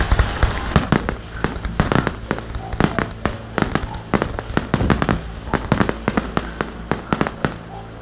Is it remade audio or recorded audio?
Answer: recorded